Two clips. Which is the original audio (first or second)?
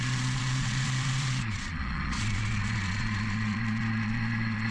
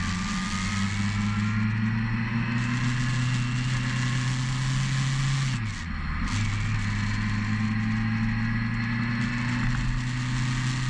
second